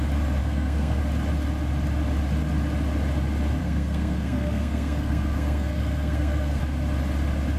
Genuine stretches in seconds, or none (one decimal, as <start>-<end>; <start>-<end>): 0.0-0.4; 1.0-3.6; 6.6-7.6